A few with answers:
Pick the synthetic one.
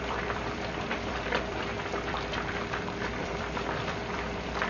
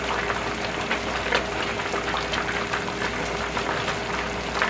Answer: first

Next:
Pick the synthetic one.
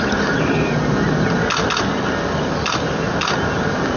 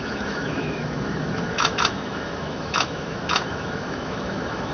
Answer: second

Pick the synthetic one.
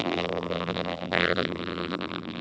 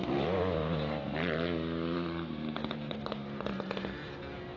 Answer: first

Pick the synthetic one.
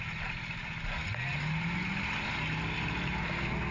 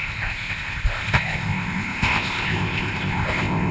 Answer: second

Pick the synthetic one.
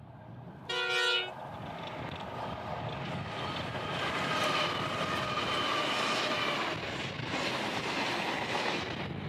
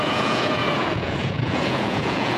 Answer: second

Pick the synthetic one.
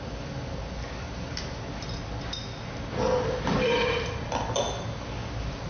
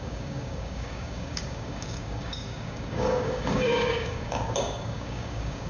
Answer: second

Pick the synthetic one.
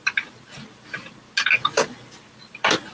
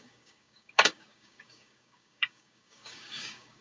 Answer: second